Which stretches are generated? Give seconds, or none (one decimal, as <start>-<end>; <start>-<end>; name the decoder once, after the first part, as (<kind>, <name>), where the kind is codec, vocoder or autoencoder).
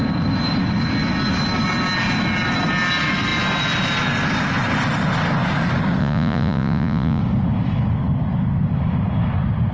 6.0-7.2 (vocoder, Vocos)